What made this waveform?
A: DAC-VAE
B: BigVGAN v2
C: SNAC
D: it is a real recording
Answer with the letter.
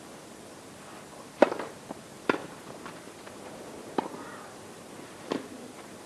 B